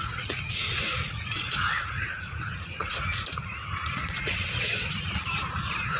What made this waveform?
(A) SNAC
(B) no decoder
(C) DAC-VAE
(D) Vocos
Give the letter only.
D